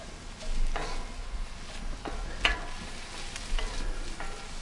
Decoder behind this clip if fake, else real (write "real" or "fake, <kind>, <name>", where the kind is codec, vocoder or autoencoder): real